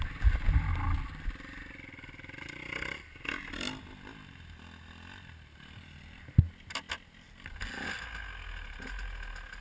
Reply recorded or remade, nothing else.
recorded